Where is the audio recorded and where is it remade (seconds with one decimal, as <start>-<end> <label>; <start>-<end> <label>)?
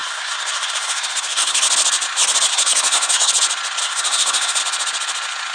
0.0-1.6 remade; 1.6-2.5 recorded; 2.5-3.3 remade; 3.3-3.8 recorded; 3.8-4.6 remade; 4.6-5.5 recorded